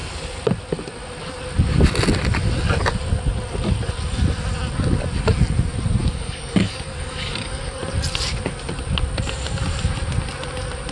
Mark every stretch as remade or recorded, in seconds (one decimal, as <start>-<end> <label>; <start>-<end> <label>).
0.0-6.0 recorded; 6.0-7.8 remade; 7.8-10.9 recorded